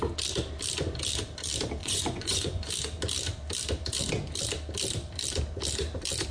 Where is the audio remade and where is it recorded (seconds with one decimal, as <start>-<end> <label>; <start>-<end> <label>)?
0.0-1.8 recorded; 1.8-2.7 remade; 2.7-6.3 recorded